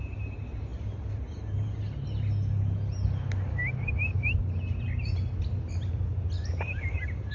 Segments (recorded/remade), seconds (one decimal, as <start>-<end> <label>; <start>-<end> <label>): 0.0-7.3 recorded